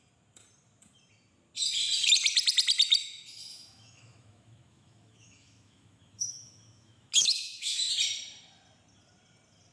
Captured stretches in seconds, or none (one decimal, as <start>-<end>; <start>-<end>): 0.0-3.5; 7.9-9.7